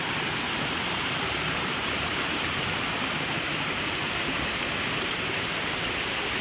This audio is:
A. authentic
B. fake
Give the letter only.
B